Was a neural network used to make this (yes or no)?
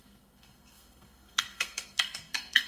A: yes